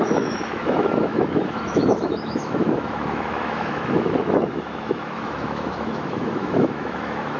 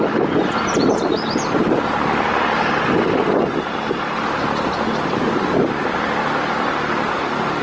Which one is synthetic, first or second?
first